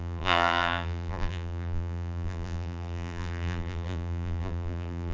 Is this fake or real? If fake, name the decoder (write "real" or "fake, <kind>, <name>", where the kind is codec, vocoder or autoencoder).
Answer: fake, vocoder, BigVGAN v2